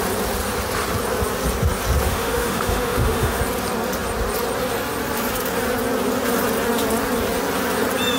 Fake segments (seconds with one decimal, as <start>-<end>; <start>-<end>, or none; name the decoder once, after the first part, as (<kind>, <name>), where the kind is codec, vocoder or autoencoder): 2.1-3.4 (autoencoder, DAC-VAE)